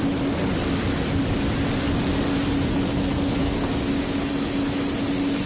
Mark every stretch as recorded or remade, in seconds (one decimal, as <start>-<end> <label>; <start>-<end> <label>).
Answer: 0.0-3.4 recorded; 3.4-4.3 remade; 4.3-5.5 recorded